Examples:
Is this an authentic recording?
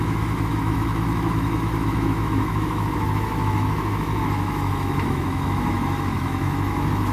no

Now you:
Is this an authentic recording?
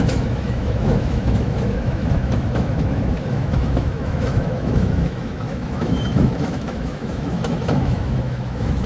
no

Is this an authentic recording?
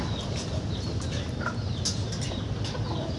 yes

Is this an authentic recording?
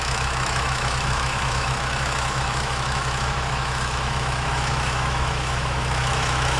no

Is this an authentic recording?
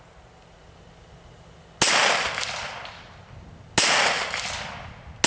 yes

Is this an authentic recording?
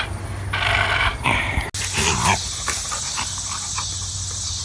yes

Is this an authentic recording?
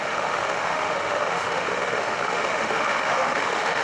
no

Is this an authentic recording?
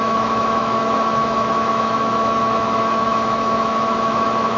no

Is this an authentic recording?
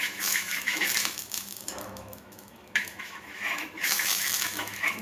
no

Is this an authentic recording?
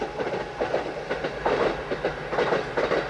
yes